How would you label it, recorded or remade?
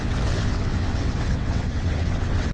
remade